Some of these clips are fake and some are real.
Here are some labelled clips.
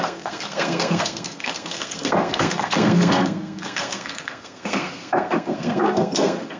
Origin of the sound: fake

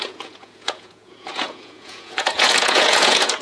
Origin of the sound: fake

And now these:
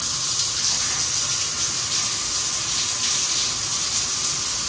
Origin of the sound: fake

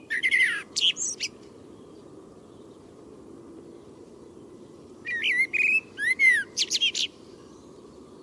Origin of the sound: fake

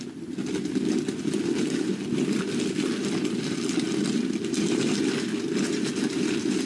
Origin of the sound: real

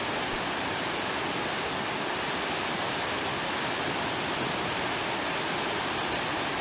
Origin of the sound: real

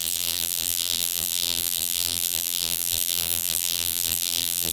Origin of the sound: fake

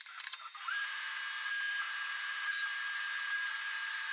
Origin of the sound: fake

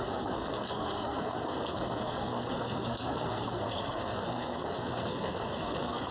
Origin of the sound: fake